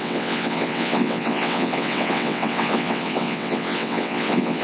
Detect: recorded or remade remade